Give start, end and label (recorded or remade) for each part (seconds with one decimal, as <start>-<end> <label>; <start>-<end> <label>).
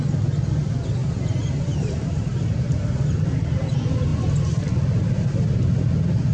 0.0-1.0 recorded; 1.0-3.2 remade; 3.2-6.3 recorded